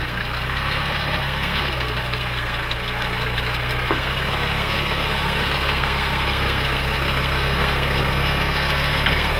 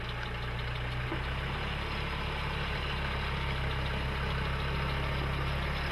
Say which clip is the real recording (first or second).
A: second